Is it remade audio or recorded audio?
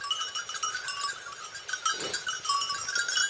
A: recorded